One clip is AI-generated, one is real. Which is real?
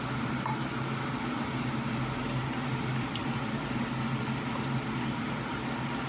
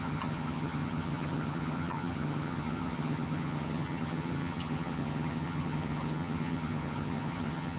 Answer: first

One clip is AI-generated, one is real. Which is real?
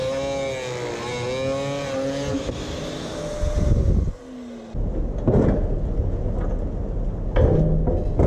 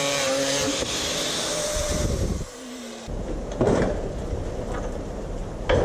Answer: first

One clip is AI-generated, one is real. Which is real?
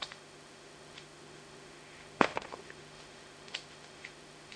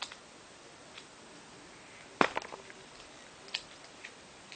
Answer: second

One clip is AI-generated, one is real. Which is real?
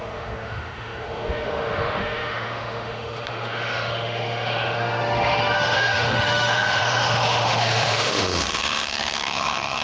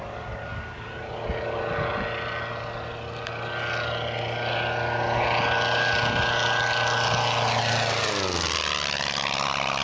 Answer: second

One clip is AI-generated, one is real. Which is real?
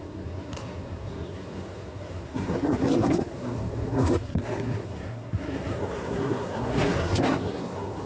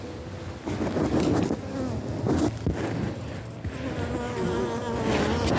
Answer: second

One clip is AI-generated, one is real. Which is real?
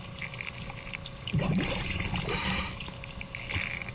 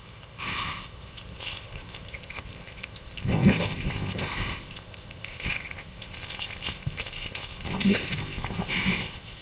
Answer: first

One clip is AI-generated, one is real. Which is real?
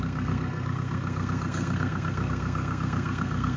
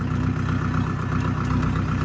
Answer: second